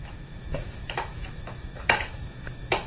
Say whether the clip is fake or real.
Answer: fake